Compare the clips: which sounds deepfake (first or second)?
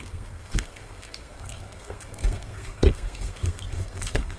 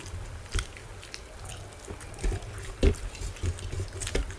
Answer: first